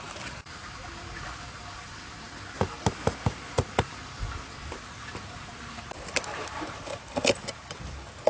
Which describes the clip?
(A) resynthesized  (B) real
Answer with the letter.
B